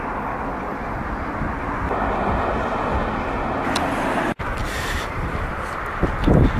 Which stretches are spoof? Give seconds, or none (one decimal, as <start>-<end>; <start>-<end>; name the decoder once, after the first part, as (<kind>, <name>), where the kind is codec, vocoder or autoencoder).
4.6-5.5 (vocoder, BigVGAN v2)